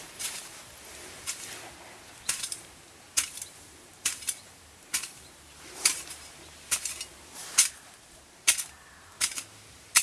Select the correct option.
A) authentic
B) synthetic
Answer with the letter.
B